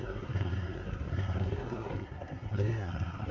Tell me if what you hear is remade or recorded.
remade